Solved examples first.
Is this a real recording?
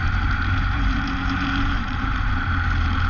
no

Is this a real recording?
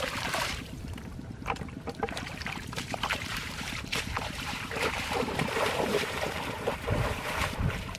no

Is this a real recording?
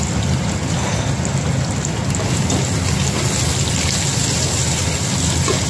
yes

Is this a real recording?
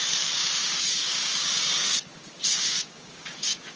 no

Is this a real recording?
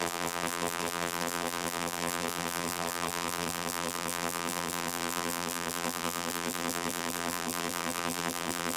no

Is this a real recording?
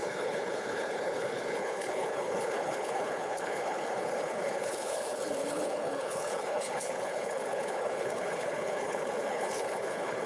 no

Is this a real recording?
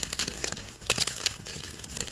no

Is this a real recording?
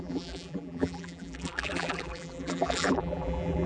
no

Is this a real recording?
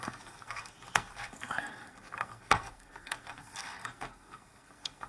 no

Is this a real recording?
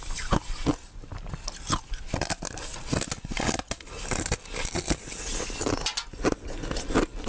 yes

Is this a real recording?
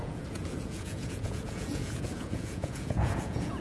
no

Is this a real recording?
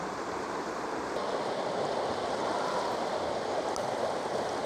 yes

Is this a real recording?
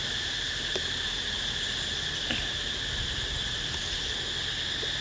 yes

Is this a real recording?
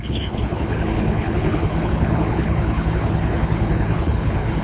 no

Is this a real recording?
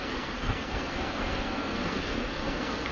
no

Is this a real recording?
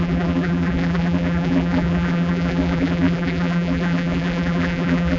no